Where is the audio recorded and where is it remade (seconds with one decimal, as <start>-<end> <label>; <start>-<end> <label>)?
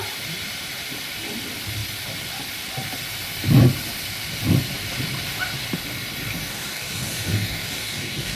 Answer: 0.0-6.4 recorded; 6.4-8.4 remade